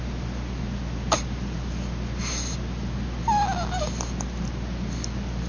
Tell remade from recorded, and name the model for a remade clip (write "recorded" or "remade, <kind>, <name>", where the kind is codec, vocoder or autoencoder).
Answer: recorded